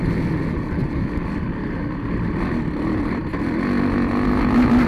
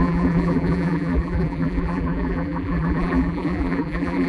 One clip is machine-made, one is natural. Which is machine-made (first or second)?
second